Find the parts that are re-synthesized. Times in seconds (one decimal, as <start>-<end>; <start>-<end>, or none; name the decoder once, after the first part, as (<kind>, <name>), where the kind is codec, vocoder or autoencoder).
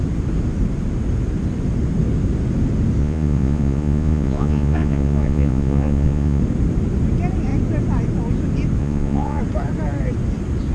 3.0-6.4 (vocoder, Vocos); 8.8-9.4